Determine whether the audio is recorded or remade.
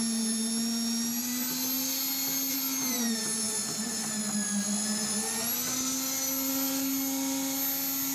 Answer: recorded